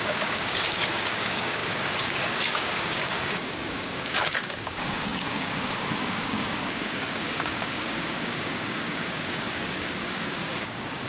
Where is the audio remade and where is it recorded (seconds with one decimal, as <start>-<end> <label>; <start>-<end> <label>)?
0.0-11.1 remade